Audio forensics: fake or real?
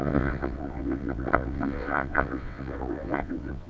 fake